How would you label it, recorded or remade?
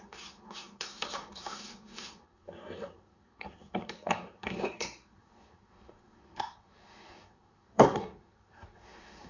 remade